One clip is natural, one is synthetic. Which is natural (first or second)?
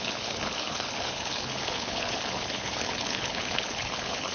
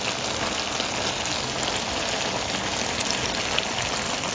second